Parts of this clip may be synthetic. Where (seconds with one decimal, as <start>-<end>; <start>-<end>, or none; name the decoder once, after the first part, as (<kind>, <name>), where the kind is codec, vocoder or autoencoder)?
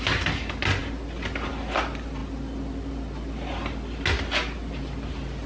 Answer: none